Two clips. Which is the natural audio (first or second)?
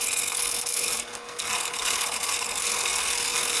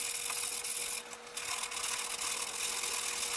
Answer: second